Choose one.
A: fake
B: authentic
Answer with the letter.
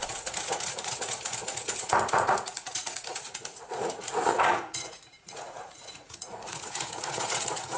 A